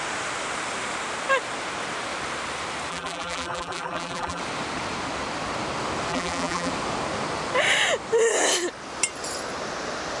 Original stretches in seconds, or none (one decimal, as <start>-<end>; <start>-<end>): 0.0-2.9; 4.4-6.1; 6.7-10.2